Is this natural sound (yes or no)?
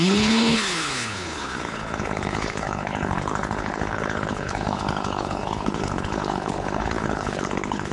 no